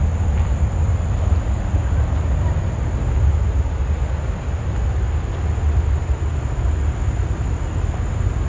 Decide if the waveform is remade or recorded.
recorded